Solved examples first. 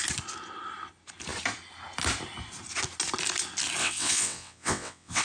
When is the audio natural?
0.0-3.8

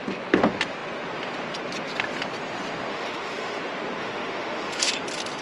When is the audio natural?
0.0-2.9; 3.6-4.0; 4.9-5.4

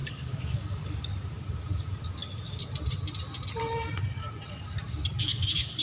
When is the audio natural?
1.1-5.2

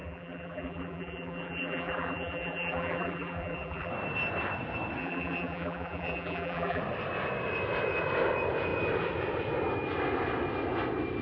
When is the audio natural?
3.9-5.0; 6.8-11.2

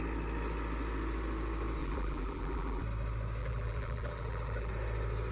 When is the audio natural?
0.0-1.8; 2.8-3.4; 4.7-5.3

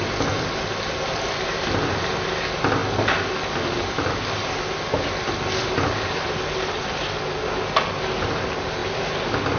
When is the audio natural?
0.0-9.6

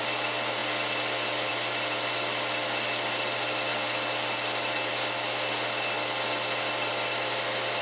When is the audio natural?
0.0-7.8